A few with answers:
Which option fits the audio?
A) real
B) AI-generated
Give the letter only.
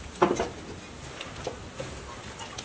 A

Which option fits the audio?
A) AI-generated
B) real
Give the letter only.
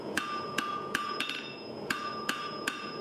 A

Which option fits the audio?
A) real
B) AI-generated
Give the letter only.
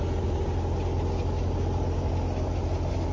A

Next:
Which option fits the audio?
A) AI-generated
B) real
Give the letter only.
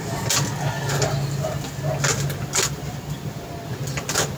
B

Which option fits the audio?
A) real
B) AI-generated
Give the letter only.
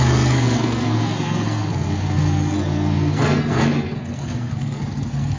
B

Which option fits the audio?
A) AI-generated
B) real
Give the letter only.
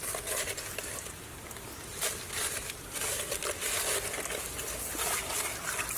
B